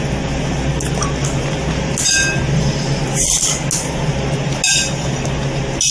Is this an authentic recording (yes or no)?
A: yes